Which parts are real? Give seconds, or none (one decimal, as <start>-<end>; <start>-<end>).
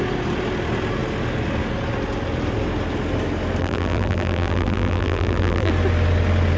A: 0.0-3.6; 5.7-6.6